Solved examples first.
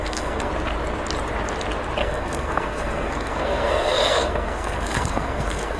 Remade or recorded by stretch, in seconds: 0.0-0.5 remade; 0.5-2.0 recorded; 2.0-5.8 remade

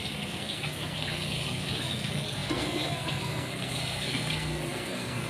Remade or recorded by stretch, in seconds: 0.0-5.3 remade

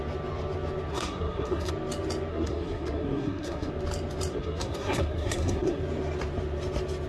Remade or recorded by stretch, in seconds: 0.0-0.9 recorded; 0.9-1.7 remade; 1.7-2.3 recorded; 2.3-3.7 remade; 3.7-4.3 recorded; 4.3-5.8 remade; 5.8-7.1 recorded

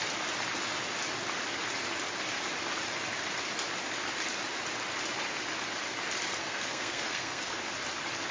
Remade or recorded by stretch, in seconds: 0.0-6.4 recorded; 6.4-7.6 remade; 7.6-8.3 recorded

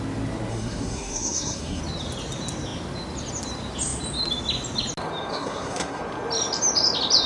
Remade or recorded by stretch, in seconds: 0.0-0.5 recorded; 0.5-1.8 remade; 1.8-5.3 recorded; 5.3-6.0 remade; 6.0-7.3 recorded

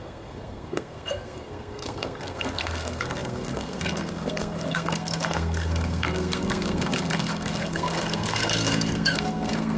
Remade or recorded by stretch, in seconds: 0.0-9.8 remade

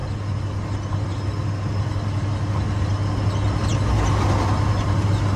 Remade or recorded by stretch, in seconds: 0.0-5.4 recorded